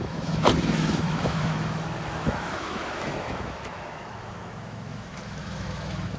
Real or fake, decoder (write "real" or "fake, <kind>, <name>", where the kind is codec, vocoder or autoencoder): fake, autoencoder, DAC-VAE